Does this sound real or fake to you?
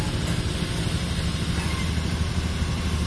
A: real